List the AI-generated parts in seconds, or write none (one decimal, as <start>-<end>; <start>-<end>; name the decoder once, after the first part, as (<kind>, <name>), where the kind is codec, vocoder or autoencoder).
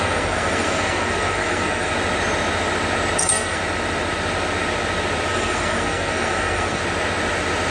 0.0-1.9 (codec, SNAC); 3.2-3.6; 5.3-6.8